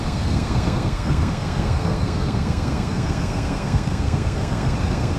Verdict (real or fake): fake